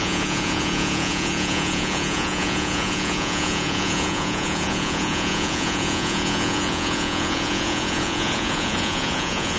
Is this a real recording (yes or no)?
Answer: no